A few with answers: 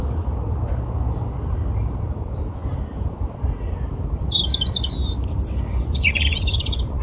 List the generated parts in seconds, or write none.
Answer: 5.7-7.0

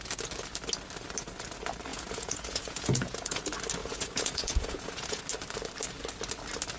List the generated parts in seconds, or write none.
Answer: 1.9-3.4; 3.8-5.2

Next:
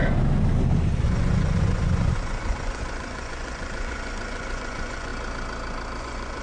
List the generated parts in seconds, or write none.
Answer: 1.0-5.1; 6.0-6.4

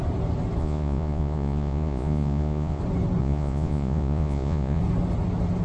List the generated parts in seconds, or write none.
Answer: 0.6-2.8; 3.2-4.8